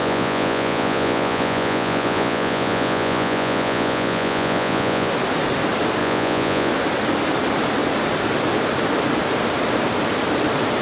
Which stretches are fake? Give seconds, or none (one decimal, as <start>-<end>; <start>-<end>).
0.0-5.1; 6.0-6.7